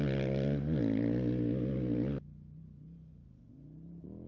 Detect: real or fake real